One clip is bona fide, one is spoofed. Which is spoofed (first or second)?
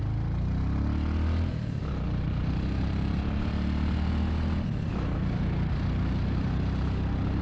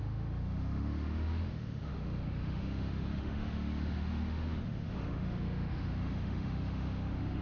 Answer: second